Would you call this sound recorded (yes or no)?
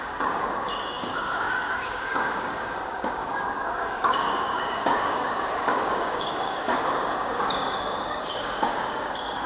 no